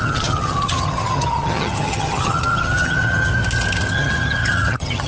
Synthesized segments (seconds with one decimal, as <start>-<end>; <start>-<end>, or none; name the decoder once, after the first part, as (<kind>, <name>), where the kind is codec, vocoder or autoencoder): 0.0-3.3 (vocoder, HiFi-GAN); 3.9-5.1